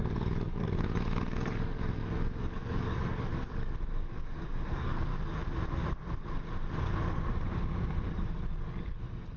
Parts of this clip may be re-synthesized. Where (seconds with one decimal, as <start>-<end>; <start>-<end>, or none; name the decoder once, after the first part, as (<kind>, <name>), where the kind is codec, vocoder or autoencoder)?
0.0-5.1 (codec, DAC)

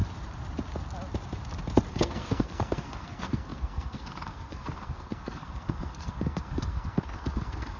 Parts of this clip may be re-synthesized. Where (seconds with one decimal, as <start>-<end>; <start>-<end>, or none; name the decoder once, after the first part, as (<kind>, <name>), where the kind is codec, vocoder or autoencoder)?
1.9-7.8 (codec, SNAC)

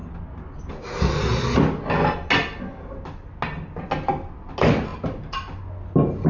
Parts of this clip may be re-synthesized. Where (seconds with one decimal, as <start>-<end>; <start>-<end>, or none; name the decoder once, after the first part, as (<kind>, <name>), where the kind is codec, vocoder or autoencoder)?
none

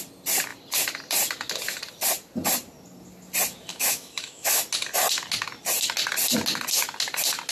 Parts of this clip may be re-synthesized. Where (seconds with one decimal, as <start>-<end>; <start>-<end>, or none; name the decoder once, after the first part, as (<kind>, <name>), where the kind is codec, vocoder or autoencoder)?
3.7-4.6 (autoencoder, DAC-VAE)